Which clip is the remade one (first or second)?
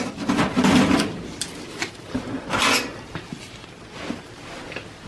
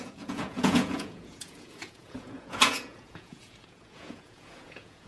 second